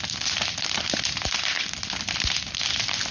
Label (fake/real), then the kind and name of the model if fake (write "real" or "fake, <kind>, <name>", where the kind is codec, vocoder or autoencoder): real